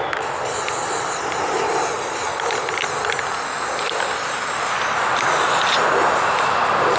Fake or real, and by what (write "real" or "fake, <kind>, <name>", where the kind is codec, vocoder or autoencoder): real